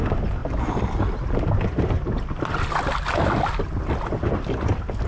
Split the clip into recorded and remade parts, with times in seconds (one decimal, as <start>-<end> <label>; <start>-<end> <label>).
0.0-5.1 recorded

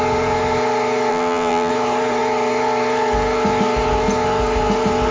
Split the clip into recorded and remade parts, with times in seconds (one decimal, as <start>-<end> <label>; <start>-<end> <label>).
0.0-1.1 recorded; 1.1-1.7 remade; 1.7-5.1 recorded

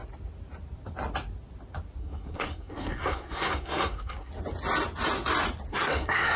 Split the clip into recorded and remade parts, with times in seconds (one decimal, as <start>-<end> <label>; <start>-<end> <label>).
0.0-2.0 recorded; 2.0-4.3 remade; 4.3-5.7 recorded; 5.7-6.4 remade

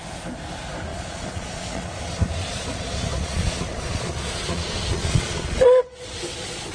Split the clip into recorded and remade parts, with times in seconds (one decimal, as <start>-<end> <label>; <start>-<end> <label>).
0.0-0.9 recorded; 0.9-1.9 remade; 1.9-2.4 recorded; 2.4-6.7 remade